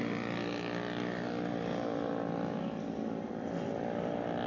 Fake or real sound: real